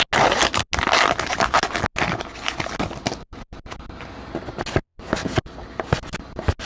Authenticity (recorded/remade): recorded